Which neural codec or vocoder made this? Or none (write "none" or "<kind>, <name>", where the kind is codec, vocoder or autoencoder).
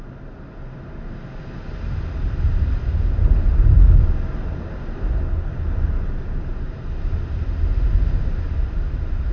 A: none